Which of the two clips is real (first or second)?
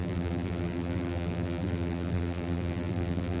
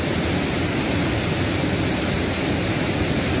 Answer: second